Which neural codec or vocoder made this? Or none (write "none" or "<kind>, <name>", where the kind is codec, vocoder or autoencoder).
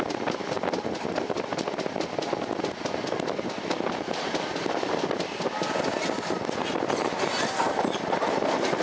none